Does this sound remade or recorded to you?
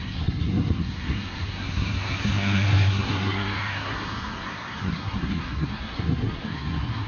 remade